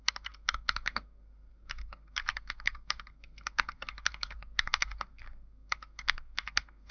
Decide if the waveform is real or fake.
fake